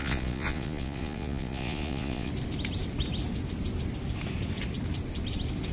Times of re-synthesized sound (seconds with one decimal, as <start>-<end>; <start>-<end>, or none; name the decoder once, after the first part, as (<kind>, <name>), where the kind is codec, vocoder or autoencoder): 0.0-2.3 (vocoder, Vocos)